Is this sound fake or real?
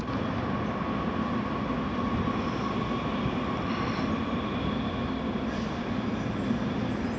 real